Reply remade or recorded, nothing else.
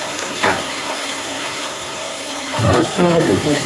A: remade